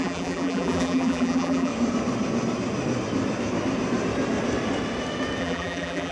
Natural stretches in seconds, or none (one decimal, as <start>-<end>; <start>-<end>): 1.7-5.4